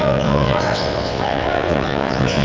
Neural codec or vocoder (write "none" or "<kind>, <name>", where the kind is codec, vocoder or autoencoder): vocoder, WaveNeXt